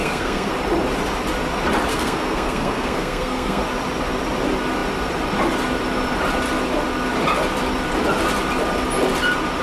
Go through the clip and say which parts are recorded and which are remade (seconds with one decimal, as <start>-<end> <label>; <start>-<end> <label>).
0.0-0.5 remade; 0.5-1.9 recorded; 1.9-3.6 remade; 3.6-9.6 recorded